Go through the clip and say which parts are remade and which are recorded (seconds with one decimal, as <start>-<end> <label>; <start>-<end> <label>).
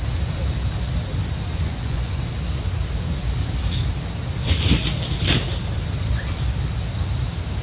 0.0-1.5 recorded; 1.5-2.2 remade; 2.2-7.6 recorded